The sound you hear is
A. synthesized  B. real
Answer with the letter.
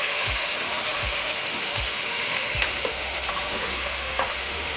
A